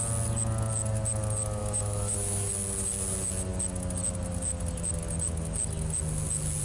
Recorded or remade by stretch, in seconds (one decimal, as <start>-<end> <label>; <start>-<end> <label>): 0.0-1.6 recorded; 1.6-2.5 remade; 2.5-6.6 recorded